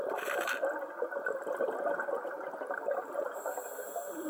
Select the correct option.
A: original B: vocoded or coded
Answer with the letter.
A